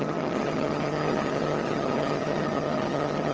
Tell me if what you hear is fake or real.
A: fake